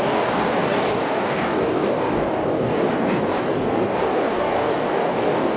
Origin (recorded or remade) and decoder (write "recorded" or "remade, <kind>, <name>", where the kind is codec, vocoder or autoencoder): remade, codec, DAC